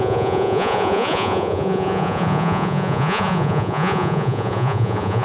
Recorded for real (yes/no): no